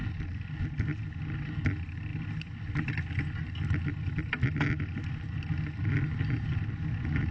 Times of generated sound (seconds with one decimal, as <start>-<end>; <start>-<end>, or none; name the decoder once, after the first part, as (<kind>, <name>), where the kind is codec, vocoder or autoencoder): none